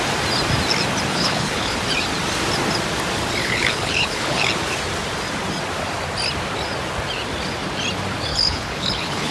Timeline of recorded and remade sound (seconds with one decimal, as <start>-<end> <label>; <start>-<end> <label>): 0.0-1.1 recorded; 1.1-1.8 remade; 1.8-3.4 recorded; 3.4-4.5 remade; 4.5-8.3 recorded; 8.3-9.3 remade